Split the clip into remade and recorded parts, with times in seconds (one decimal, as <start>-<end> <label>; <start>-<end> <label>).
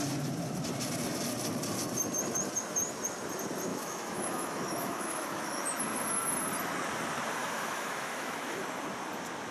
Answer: 0.0-3.7 recorded; 3.7-5.8 remade; 5.8-7.4 recorded; 7.4-8.6 remade; 8.6-9.5 recorded